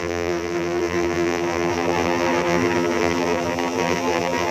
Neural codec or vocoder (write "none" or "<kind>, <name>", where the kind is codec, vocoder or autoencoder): vocoder, BigVGAN v2